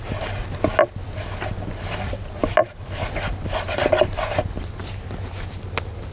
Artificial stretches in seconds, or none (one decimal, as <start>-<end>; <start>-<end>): none